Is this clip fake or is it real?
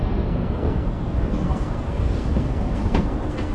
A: fake